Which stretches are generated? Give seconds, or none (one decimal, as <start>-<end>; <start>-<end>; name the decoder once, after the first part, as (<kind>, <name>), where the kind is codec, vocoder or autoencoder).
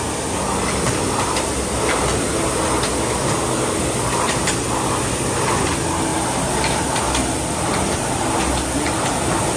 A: none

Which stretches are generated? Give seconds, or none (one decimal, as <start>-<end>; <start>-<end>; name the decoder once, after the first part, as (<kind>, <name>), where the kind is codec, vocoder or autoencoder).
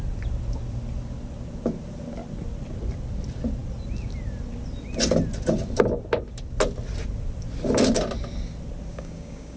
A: 8.9-9.6 (codec, DAC)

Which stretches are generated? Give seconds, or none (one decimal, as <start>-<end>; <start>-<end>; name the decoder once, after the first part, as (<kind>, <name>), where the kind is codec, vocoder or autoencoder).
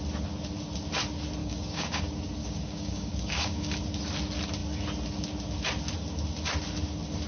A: 1.4-2.0 (codec, DAC); 2.4-3.7